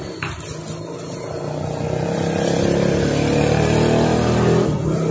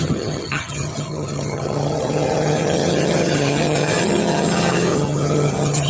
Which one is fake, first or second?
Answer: second